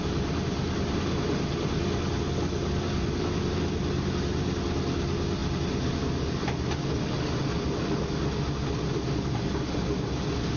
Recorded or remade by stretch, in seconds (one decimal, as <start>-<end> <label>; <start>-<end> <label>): 0.0-10.6 recorded

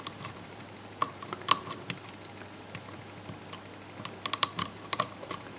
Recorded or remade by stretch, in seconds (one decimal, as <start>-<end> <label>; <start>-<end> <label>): 0.0-1.0 remade; 1.0-4.4 recorded; 4.4-5.6 remade

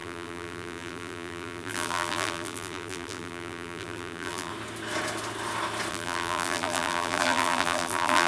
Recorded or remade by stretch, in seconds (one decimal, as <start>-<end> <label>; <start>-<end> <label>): 0.0-4.5 remade; 4.5-5.9 recorded; 5.9-8.3 remade

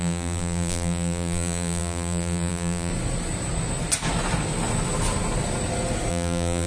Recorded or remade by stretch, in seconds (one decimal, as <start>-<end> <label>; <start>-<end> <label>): 0.0-2.9 remade; 2.9-6.1 recorded; 6.1-6.7 remade

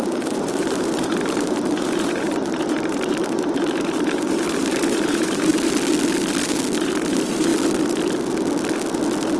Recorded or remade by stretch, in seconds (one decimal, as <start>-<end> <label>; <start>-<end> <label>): 0.0-5.5 remade; 5.5-6.8 recorded; 6.8-7.5 remade; 7.5-9.4 recorded

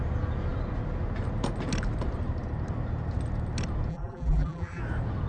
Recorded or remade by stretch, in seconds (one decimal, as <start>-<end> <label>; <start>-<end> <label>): 0.0-3.9 recorded; 3.9-4.8 remade; 4.8-5.3 recorded

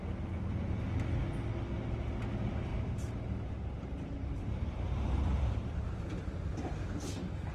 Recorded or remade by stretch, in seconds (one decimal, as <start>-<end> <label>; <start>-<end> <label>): 0.0-2.7 recorded; 2.7-6.2 remade; 6.2-7.5 recorded

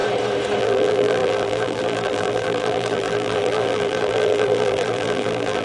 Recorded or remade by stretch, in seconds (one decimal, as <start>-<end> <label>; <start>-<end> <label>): 0.0-0.6 recorded; 0.6-5.6 remade